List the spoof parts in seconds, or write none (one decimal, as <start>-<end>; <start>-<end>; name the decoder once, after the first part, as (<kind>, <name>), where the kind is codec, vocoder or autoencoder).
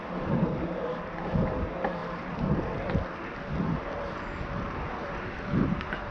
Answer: 0.0-2.0 (vocoder, BigVGAN v2); 5.0-6.1